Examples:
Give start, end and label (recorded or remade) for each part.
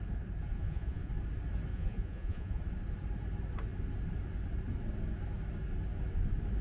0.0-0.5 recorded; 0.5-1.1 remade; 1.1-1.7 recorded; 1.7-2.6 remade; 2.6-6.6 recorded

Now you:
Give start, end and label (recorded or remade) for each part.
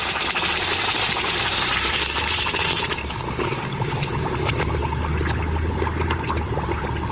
0.0-4.8 remade; 4.8-7.1 recorded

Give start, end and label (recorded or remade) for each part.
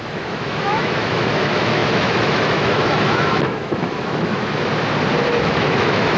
0.0-4.7 remade; 4.7-5.3 recorded; 5.3-6.2 remade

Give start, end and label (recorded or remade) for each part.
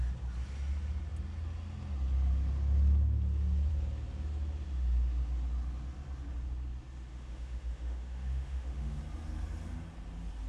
0.0-7.1 recorded; 7.1-9.0 remade; 9.0-10.5 recorded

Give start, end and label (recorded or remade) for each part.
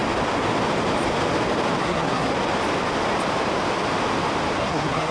0.0-1.8 recorded; 1.8-2.3 remade; 2.3-4.6 recorded; 4.6-5.1 remade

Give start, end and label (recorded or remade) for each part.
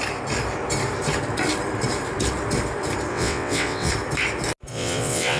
0.0-3.1 recorded; 3.1-3.9 remade; 3.9-4.7 recorded; 4.7-5.4 remade